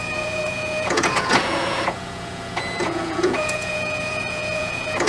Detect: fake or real fake